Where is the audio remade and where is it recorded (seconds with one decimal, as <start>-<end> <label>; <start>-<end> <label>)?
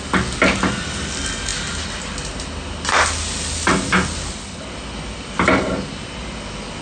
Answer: 0.0-6.8 recorded